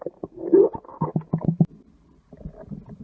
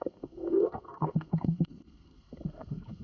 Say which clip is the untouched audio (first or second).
first